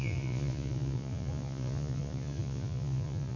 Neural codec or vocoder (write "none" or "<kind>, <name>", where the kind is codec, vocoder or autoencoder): vocoder, Vocos